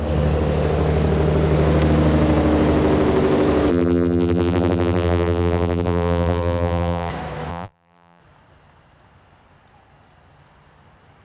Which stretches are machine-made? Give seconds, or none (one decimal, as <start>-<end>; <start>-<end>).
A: 3.7-7.1; 7.5-8.2